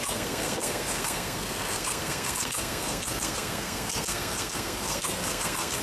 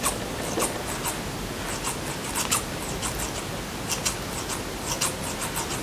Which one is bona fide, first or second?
second